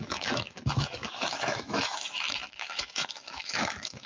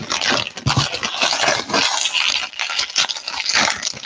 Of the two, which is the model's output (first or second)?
first